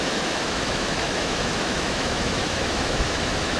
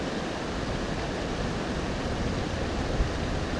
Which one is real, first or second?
second